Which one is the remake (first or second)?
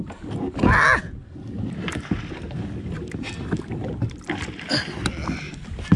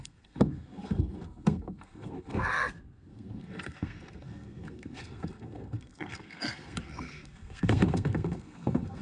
second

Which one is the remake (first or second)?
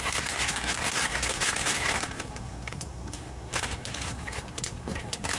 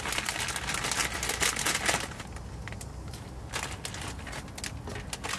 first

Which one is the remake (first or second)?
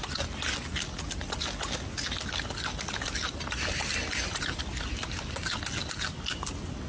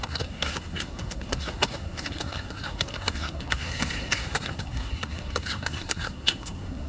second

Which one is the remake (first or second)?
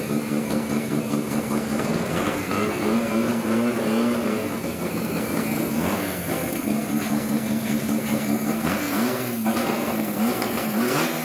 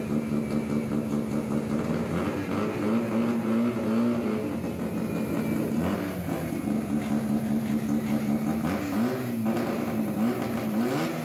first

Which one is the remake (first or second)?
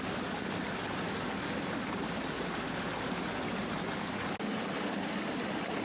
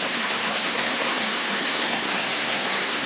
second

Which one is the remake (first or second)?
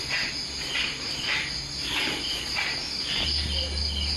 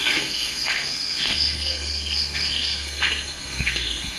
second